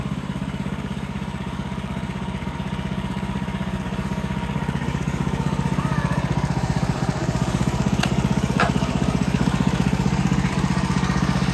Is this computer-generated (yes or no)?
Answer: yes